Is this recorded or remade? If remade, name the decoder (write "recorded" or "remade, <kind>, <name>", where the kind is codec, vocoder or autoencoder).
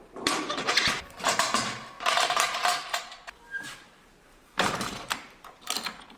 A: remade, vocoder, BigVGAN v2